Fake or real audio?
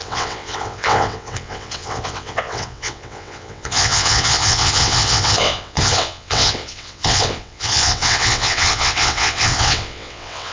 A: fake